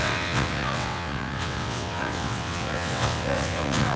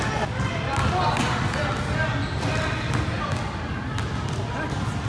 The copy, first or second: first